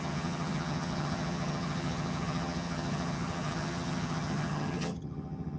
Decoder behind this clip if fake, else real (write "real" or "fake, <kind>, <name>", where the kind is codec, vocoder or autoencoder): fake, vocoder, HiFi-GAN